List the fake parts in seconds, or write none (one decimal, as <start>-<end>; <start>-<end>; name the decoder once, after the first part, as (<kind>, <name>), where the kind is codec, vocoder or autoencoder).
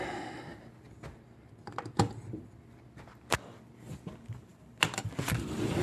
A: none